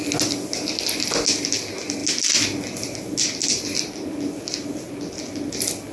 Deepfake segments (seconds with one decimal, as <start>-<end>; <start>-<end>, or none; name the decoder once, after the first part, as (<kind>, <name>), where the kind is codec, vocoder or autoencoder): none